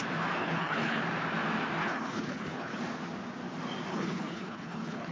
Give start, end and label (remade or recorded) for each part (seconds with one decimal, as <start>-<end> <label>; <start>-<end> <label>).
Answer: 0.0-0.4 recorded; 0.4-1.0 remade; 1.0-1.8 recorded; 1.8-2.8 remade; 2.8-3.9 recorded; 3.9-5.1 remade